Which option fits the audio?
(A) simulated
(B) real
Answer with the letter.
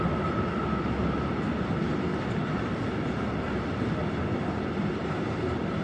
B